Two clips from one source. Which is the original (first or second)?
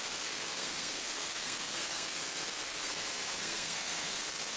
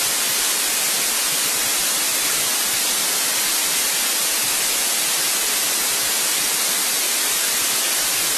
second